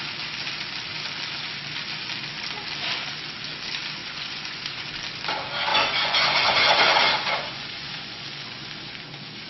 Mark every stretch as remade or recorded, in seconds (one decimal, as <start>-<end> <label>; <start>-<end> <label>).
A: 0.0-4.0 recorded; 4.0-4.9 remade; 4.9-5.7 recorded; 5.7-8.7 remade; 8.7-9.5 recorded